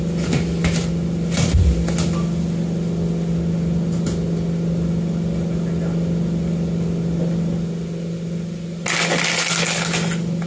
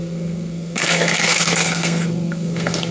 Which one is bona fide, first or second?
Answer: first